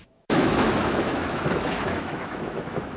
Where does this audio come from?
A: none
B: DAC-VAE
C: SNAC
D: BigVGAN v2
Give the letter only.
B